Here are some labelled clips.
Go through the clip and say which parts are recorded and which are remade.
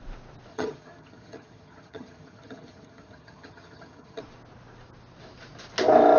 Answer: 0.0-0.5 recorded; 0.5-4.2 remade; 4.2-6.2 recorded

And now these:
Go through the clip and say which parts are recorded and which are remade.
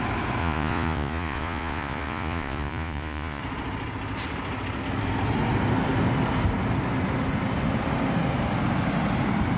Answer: 0.0-0.4 recorded; 0.4-3.4 remade; 3.4-9.6 recorded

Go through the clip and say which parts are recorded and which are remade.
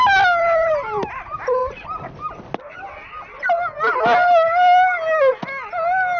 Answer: 0.0-6.2 recorded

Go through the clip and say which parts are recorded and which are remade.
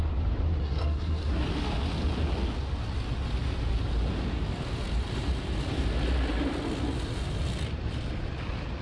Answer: 0.0-0.6 recorded; 0.6-1.4 remade; 1.4-8.8 recorded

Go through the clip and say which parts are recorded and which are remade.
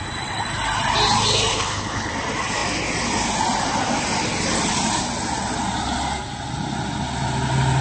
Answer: 0.0-1.5 recorded; 1.5-2.1 remade; 2.1-7.8 recorded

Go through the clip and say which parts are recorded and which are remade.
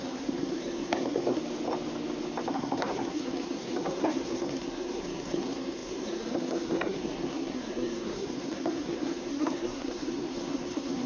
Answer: 0.0-1.4 remade; 1.4-2.5 recorded; 2.5-11.1 remade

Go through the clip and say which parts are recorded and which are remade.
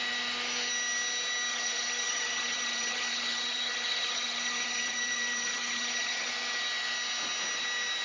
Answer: 0.0-1.5 recorded; 1.5-6.3 remade; 6.3-8.0 recorded